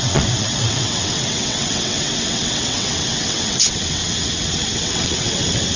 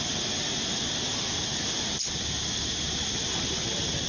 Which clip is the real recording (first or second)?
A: second